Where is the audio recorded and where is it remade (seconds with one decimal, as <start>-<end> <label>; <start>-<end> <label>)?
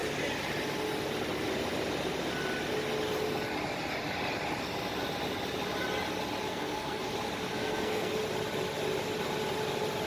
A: 0.0-6.5 recorded; 6.5-7.1 remade; 7.1-7.5 recorded; 7.5-8.1 remade; 8.1-10.1 recorded